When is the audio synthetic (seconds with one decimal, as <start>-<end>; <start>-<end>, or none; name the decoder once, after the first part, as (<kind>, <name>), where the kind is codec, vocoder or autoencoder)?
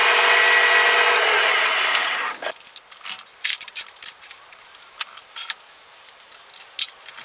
3.2-5.2 (vocoder, BigVGAN v2)